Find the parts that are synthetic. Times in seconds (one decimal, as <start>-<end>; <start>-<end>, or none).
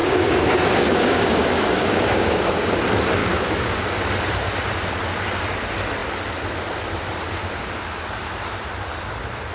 0.0-2.7; 3.2-4.0